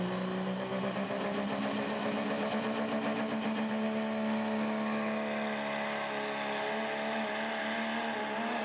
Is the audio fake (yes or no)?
no